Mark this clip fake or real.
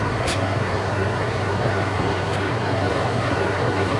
fake